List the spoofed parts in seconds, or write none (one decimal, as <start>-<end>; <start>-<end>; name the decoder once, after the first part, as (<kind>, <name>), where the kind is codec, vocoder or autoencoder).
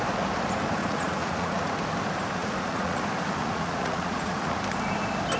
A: 0.8-1.7 (vocoder, Vocos); 2.4-3.0; 3.4-4.6